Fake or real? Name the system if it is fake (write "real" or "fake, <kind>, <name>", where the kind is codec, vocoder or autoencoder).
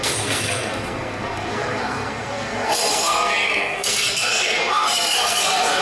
fake, codec, SNAC